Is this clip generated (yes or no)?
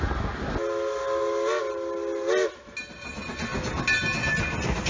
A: no